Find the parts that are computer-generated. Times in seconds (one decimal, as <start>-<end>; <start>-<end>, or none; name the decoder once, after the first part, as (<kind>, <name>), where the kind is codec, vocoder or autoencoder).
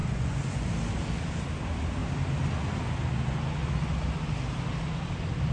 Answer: 0.0-0.7 (vocoder, Vocos)